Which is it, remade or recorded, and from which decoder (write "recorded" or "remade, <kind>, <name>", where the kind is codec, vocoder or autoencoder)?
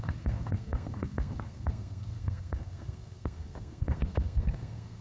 remade, codec, SNAC